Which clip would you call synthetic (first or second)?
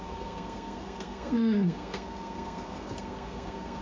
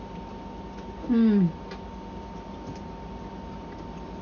first